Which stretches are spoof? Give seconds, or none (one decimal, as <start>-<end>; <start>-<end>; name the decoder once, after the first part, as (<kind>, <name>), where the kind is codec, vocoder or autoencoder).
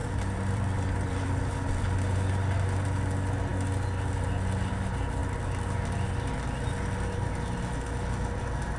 0.0-1.5 (vocoder, BigVGAN v2)